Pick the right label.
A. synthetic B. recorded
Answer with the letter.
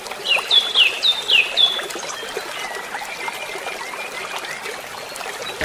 A